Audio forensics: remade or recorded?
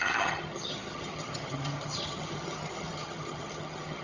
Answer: remade